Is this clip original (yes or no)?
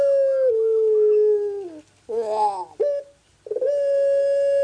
yes